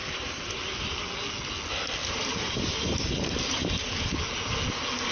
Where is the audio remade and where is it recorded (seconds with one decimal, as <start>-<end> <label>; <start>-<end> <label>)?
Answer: 0.0-0.8 remade; 0.8-2.0 recorded; 2.0-4.1 remade; 4.1-5.1 recorded